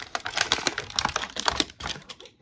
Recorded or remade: remade